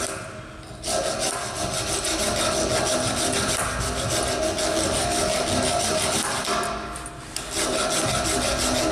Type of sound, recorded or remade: recorded